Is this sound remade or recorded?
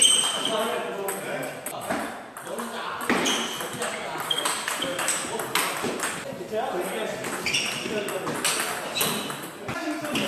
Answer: recorded